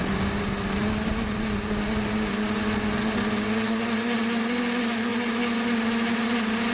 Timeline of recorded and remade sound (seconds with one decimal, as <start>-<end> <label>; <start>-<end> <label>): 0.0-6.7 recorded